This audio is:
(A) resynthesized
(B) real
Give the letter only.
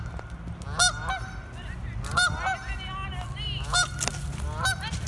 B